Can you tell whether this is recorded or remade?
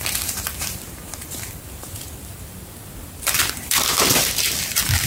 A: remade